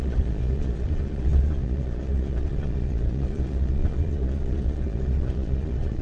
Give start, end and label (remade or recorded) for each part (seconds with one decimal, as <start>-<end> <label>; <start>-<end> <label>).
0.0-6.0 remade